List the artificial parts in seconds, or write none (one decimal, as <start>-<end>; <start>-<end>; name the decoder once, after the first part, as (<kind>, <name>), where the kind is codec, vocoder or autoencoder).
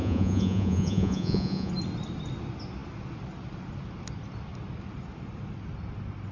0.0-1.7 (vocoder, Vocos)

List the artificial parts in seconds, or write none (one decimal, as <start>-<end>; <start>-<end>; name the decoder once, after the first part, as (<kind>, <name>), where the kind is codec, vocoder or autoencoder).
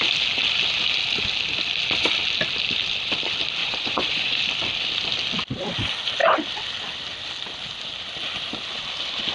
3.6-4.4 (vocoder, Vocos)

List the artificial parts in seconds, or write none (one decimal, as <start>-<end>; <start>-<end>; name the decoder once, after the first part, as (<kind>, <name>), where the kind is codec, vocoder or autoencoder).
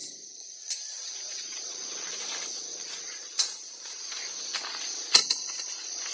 0.0-2.1 (vocoder, Vocos); 2.7-4.0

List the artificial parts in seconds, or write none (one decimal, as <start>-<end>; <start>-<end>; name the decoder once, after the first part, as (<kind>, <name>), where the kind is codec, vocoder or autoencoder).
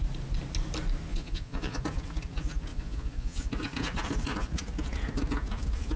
1.1-1.8 (vocoder, Vocos); 2.7-3.5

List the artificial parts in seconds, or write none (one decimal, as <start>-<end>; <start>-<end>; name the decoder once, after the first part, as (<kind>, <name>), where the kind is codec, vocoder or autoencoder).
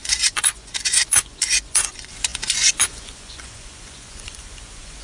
0.0-5.0 (vocoder, Vocos)